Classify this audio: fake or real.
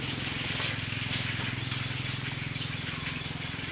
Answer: real